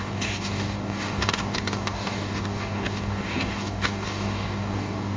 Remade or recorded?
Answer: remade